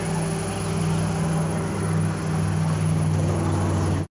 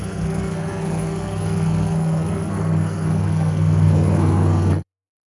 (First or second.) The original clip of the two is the first